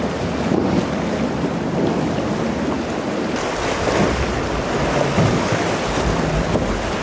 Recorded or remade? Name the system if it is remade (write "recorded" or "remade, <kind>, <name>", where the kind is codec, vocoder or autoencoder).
recorded